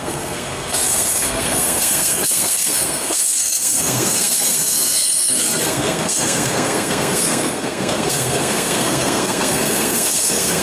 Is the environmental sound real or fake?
fake